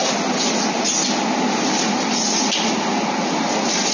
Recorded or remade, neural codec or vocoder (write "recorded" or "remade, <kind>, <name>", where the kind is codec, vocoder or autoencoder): recorded